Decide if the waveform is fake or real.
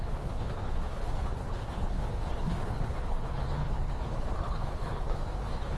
fake